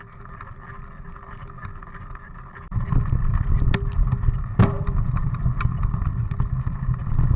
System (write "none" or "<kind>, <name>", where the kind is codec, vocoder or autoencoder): none